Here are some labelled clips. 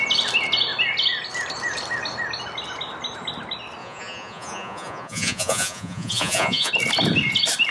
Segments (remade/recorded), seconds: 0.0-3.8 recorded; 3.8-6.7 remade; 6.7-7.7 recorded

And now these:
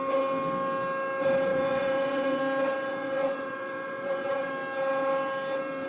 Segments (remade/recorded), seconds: 0.0-1.5 recorded; 1.5-2.4 remade; 2.4-2.9 recorded; 2.9-4.5 remade; 4.5-5.9 recorded

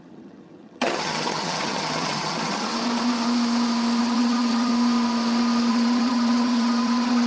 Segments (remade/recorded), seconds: 0.0-2.7 remade; 2.7-4.0 recorded; 4.0-4.7 remade; 4.7-5.7 recorded; 5.7-7.3 remade

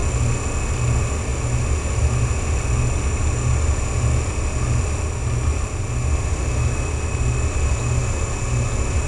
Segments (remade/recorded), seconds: 0.0-9.1 recorded